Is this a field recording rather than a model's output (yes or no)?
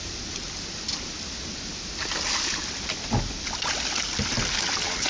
yes